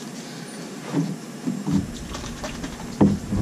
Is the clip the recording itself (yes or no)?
yes